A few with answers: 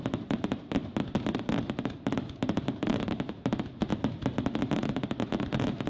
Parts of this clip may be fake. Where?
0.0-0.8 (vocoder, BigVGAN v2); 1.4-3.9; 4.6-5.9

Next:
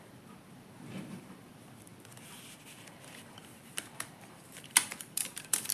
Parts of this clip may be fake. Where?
0.0-1.9 (vocoder, BigVGAN v2); 2.6-5.7

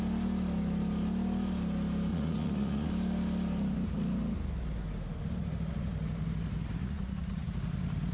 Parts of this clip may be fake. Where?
2.1-2.9 (vocoder, Vocos); 6.8-7.5

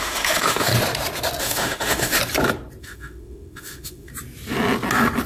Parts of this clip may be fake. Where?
0.0-0.7 (autoencoder, DAC-VAE); 1.4-2.2; 2.8-4.1